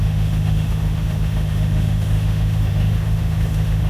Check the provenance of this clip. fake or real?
fake